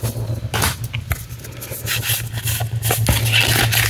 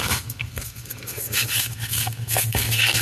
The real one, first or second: first